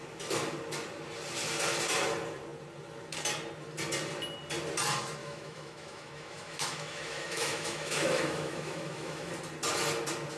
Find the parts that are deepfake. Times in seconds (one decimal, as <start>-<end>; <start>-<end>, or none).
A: 5.2-9.3